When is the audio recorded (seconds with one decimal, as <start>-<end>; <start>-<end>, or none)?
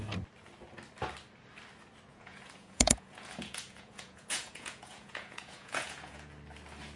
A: 0.0-2.1; 6.3-7.0